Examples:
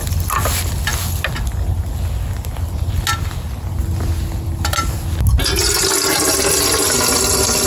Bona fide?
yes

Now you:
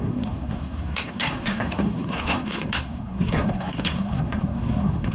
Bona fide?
no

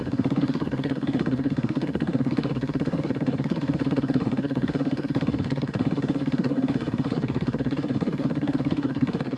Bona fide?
no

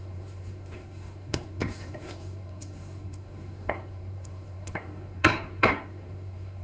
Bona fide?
no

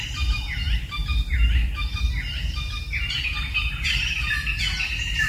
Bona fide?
yes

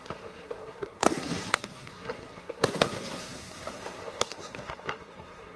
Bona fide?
no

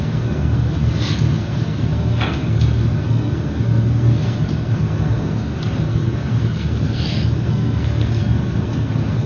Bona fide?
no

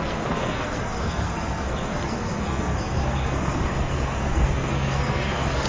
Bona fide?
no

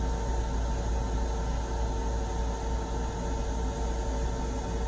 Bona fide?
yes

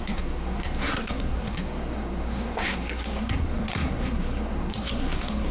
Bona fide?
no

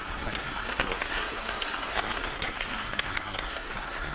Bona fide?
no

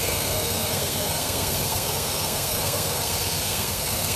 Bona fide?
no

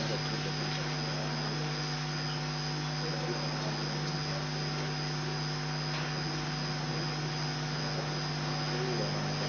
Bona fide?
yes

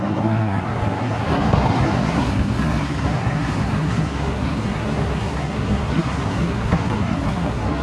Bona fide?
no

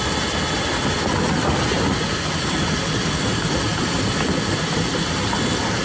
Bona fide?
yes